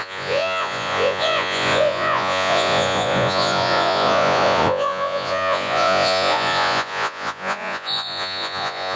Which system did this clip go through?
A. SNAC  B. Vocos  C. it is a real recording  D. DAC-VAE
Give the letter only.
B